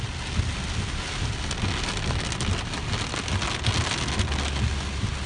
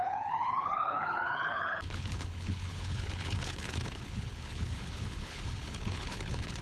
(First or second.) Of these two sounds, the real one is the first